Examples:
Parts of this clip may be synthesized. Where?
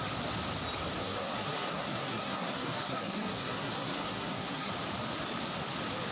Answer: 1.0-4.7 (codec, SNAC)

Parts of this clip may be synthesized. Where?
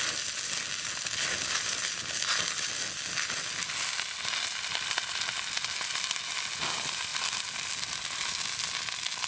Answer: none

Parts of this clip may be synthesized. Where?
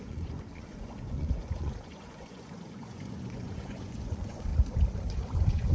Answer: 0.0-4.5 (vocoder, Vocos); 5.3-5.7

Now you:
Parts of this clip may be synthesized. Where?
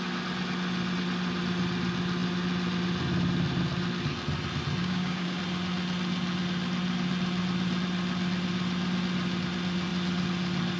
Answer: 4.8-5.4 (codec, DAC)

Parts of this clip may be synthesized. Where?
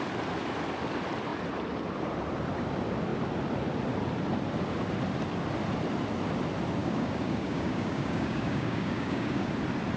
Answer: 6.8-9.5 (codec, DAC)